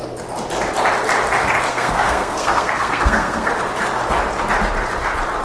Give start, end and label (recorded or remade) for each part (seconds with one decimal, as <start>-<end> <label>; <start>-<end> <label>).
0.0-1.7 recorded; 1.7-3.5 remade; 3.5-5.4 recorded